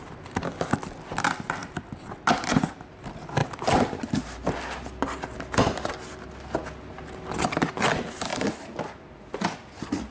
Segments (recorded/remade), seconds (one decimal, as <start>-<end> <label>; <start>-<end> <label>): 0.0-10.1 recorded